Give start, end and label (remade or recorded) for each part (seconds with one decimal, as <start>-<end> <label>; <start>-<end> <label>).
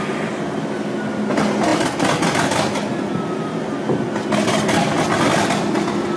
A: 0.0-6.2 recorded